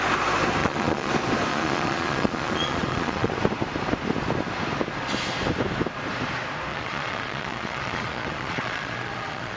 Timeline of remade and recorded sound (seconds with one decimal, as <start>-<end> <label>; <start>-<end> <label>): 0.0-0.6 recorded; 0.6-1.1 remade; 1.1-1.5 recorded; 1.5-3.3 remade; 3.3-6.7 recorded; 6.7-9.6 remade